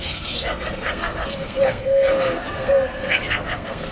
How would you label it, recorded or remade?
remade